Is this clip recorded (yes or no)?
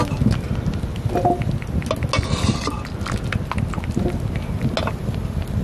yes